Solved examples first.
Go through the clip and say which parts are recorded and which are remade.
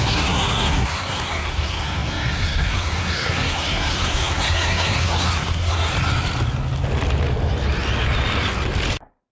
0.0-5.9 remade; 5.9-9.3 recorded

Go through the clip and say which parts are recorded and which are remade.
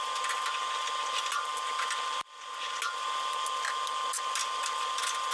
0.0-5.3 recorded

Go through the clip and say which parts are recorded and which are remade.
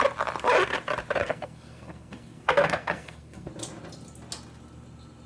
0.0-1.2 recorded; 1.2-3.5 remade; 3.5-5.3 recorded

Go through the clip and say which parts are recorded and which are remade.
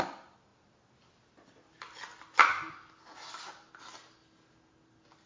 0.0-5.3 recorded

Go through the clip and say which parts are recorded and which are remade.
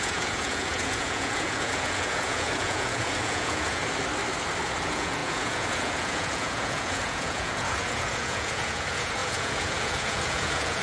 0.0-3.8 remade; 3.8-4.6 recorded; 4.6-10.8 remade